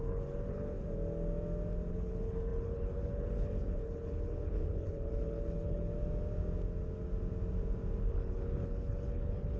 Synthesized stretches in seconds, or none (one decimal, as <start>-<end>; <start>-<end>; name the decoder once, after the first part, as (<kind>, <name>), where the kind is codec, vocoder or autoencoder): 0.0-0.7 (codec, HILCodec); 1.9-5.9; 8.0-9.6